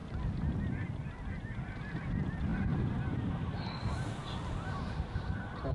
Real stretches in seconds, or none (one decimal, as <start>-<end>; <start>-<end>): 0.0-2.5; 3.3-4.2